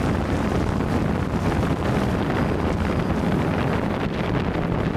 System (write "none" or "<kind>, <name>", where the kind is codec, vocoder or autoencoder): vocoder, BigVGAN v2